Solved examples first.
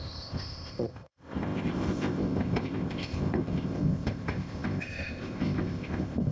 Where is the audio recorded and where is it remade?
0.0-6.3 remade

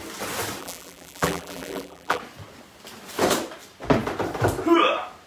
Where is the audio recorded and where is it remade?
0.0-0.6 recorded; 0.6-2.2 remade; 2.2-5.3 recorded

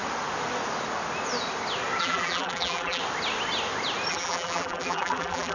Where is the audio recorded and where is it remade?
0.0-2.0 recorded; 2.0-3.0 remade; 3.0-4.1 recorded; 4.1-5.5 remade

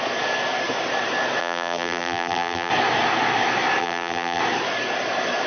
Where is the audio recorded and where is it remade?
0.0-1.4 recorded; 1.4-2.7 remade; 2.7-3.8 recorded; 3.8-4.4 remade; 4.4-5.5 recorded

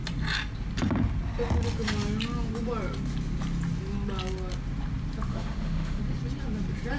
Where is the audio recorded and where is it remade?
0.0-5.3 recorded; 5.3-6.0 remade; 6.0-7.0 recorded

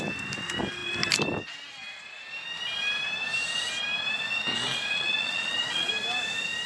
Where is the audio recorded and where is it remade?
0.0-4.7 recorded; 4.7-5.9 remade; 5.9-6.7 recorded

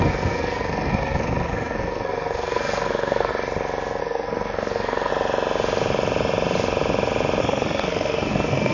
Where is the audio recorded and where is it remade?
0.0-3.3 remade; 3.3-4.0 recorded; 4.0-5.1 remade; 5.1-7.4 recorded; 7.4-8.7 remade

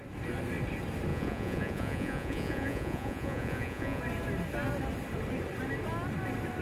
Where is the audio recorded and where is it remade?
0.0-1.1 recorded; 1.1-4.0 remade; 4.0-6.6 recorded